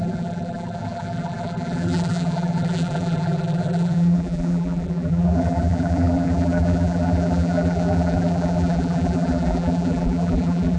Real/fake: fake